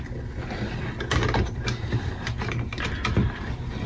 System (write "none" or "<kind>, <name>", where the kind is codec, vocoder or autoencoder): none